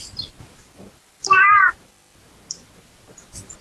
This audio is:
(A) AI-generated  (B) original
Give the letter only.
B